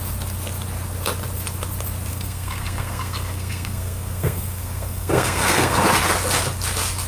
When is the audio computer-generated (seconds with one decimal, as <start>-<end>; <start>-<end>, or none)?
2.1-5.8